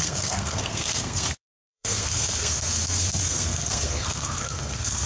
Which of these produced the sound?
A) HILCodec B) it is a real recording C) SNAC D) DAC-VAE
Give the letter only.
C